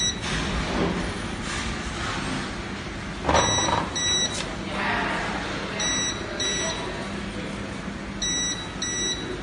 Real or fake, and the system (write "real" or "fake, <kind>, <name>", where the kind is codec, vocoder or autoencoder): real